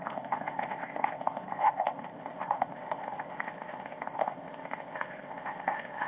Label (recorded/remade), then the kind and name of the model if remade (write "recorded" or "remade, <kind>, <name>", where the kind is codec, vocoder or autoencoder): remade, codec, ZipCodec